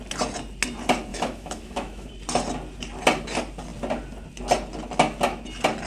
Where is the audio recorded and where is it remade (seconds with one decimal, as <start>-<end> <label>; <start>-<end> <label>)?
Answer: 0.0-1.1 recorded; 1.1-2.1 remade; 2.1-5.9 recorded